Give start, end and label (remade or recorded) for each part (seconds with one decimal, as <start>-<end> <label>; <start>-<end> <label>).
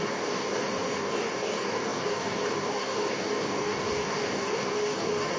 0.0-5.4 remade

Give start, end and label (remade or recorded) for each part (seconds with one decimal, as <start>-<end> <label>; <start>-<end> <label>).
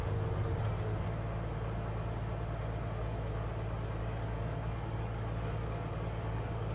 0.0-4.0 recorded; 4.0-6.7 remade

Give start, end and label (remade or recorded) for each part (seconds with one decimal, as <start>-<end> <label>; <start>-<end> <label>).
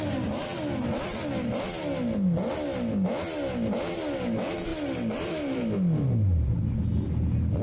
0.0-7.6 recorded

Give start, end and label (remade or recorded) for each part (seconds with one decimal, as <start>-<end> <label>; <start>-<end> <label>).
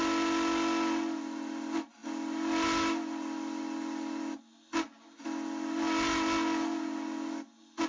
0.0-7.9 recorded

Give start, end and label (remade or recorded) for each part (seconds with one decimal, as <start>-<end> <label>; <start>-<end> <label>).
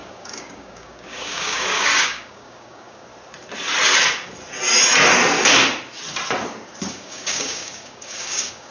0.0-3.1 remade; 3.1-6.9 recorded; 6.9-8.7 remade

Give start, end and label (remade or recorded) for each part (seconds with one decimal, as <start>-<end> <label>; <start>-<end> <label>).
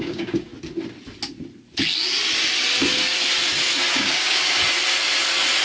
0.0-0.5 remade; 0.5-3.9 recorded; 3.9-4.6 remade; 4.6-5.6 recorded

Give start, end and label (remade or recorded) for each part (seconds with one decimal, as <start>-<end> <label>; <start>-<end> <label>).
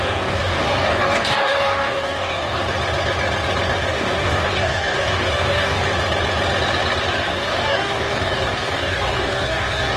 0.0-2.6 remade; 2.6-3.9 recorded; 3.9-5.9 remade; 5.9-7.3 recorded; 7.3-10.0 remade